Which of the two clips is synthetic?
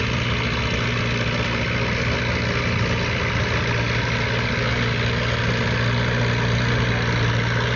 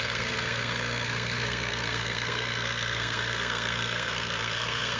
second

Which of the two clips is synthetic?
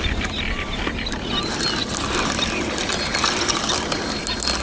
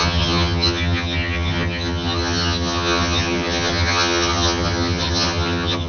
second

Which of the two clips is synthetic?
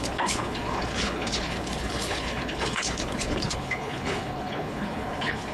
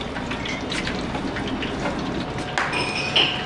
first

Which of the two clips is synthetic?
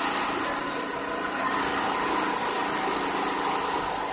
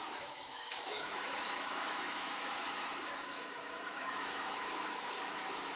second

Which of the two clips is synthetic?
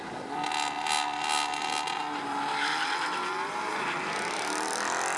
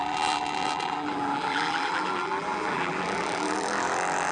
second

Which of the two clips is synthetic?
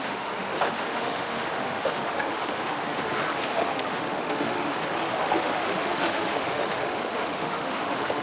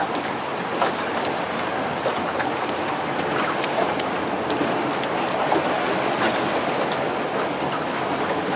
first